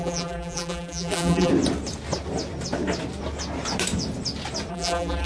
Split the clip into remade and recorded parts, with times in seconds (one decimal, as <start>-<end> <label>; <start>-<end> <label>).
0.0-1.5 remade; 1.5-4.7 recorded; 4.7-5.3 remade